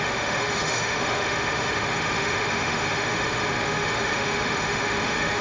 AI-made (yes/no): yes